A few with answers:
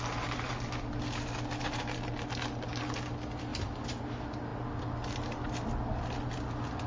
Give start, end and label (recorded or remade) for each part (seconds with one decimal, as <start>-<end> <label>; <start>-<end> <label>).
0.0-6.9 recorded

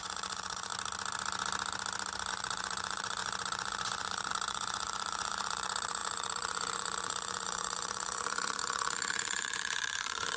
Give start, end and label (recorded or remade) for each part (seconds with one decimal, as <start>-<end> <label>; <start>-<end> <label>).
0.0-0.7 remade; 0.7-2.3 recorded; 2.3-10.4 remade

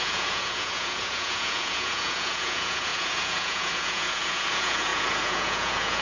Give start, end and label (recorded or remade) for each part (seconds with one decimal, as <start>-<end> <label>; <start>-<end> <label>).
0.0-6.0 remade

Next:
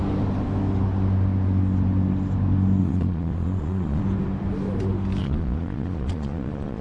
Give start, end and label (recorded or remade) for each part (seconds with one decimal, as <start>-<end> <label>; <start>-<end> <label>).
0.0-2.8 recorded; 2.8-4.0 remade; 4.0-5.2 recorded; 5.2-6.8 remade

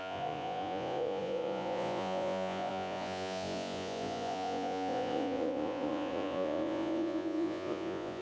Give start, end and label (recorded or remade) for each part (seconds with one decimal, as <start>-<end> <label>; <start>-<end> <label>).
0.0-8.2 remade

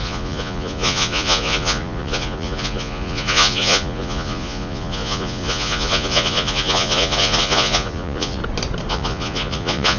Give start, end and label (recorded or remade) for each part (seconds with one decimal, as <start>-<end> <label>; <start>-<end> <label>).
0.0-8.4 remade; 8.4-8.9 recorded; 8.9-10.0 remade